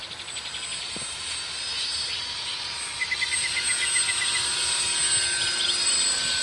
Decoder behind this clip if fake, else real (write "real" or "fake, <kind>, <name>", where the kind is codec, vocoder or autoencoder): real